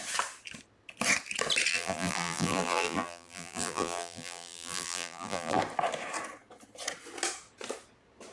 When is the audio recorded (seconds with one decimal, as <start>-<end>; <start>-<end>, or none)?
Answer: 0.0-1.7; 5.6-8.3